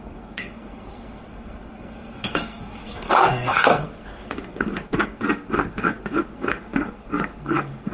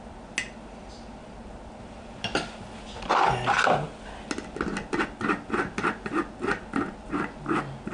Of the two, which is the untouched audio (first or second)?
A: second